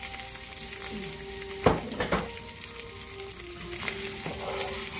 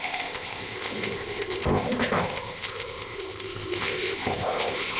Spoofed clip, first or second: second